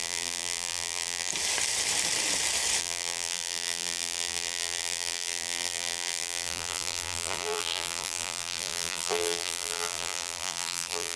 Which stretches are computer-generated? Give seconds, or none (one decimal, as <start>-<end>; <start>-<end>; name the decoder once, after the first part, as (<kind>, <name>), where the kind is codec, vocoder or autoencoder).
0.0-1.3 (vocoder, BigVGAN v2); 2.8-11.2